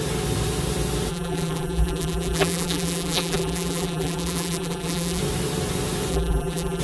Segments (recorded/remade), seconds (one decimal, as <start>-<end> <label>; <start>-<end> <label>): 0.0-1.1 recorded; 1.1-5.2 remade; 5.2-6.1 recorded; 6.1-6.8 remade